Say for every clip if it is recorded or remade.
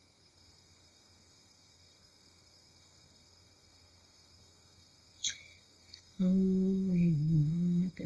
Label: remade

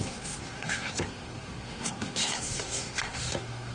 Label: remade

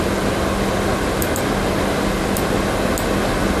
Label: recorded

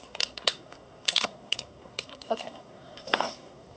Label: remade